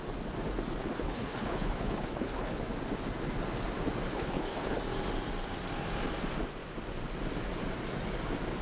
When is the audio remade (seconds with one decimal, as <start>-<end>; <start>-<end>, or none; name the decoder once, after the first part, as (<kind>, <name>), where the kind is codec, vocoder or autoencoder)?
0.8-2.6 (codec, HILCodec); 4.1-4.8